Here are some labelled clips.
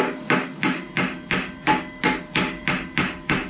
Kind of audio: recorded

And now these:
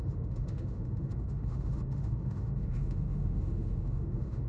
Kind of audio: remade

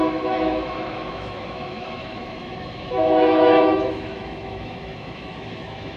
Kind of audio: remade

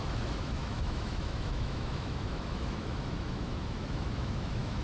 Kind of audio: remade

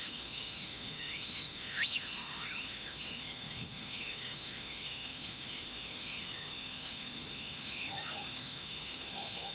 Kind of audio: remade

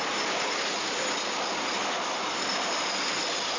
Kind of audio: recorded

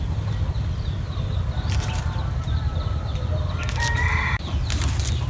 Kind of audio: recorded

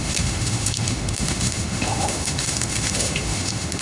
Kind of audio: remade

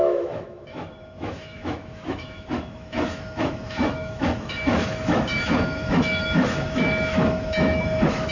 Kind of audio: remade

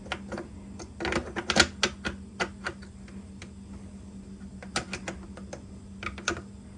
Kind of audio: recorded